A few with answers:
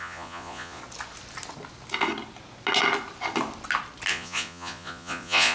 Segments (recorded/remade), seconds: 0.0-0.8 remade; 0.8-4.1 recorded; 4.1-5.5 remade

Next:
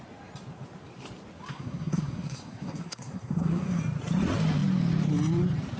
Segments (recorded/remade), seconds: 0.0-1.5 recorded; 1.5-3.8 remade; 3.8-5.8 recorded

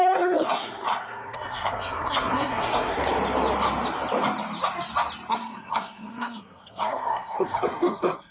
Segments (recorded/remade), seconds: 0.0-3.0 remade; 3.0-5.3 recorded; 5.3-8.3 remade

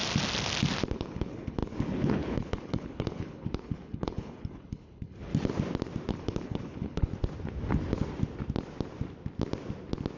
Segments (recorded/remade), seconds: 0.0-0.9 recorded; 0.9-5.3 remade; 5.3-6.1 recorded; 6.1-7.1 remade; 7.1-10.2 recorded

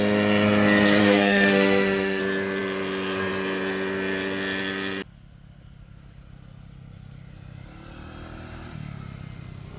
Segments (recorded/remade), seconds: 0.0-1.0 recorded; 1.0-2.2 remade; 2.2-9.8 recorded